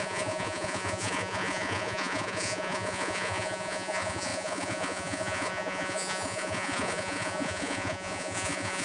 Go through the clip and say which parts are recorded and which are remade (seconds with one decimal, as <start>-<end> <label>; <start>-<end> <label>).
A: 0.0-8.8 remade